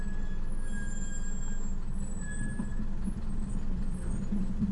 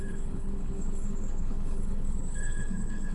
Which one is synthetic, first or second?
second